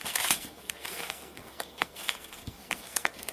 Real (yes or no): no